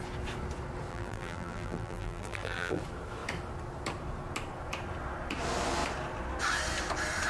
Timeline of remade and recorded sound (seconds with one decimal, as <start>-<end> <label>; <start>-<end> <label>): 0.0-0.9 recorded; 0.9-2.8 remade; 2.8-7.3 recorded

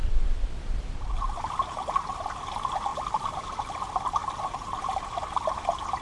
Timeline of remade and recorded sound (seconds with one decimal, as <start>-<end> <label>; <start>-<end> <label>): 0.0-1.4 remade; 1.4-2.9 recorded; 2.9-3.6 remade; 3.6-4.2 recorded; 4.2-4.8 remade; 4.8-6.0 recorded